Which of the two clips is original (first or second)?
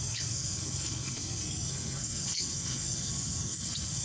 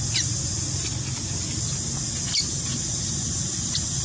second